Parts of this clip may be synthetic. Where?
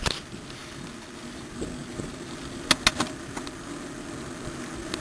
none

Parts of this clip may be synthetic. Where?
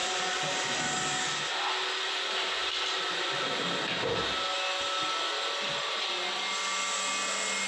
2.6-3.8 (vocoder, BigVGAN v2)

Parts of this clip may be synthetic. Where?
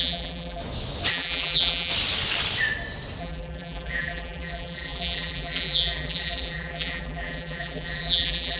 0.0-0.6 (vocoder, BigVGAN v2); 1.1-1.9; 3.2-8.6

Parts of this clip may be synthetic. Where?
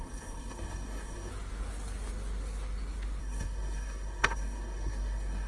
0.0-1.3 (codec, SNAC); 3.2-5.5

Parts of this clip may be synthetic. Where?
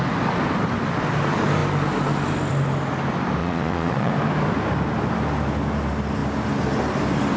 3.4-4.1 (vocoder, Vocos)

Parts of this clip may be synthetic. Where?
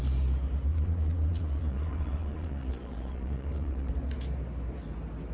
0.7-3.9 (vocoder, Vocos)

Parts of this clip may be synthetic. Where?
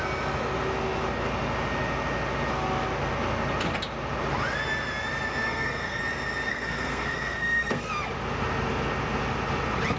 5.4-6.0 (codec, SNAC); 6.5-7.9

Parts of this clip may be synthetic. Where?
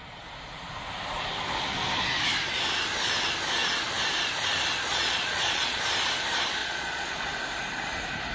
4.9-5.8 (vocoder, Vocos); 6.6-7.2